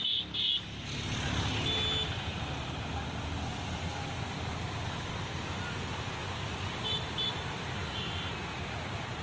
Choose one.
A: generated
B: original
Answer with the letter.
B